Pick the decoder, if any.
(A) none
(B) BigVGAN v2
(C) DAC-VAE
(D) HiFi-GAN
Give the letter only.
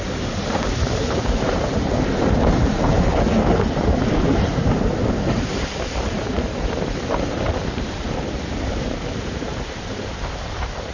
B